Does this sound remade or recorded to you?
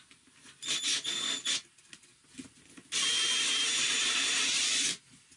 recorded